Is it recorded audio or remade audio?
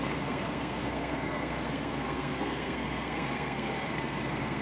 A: remade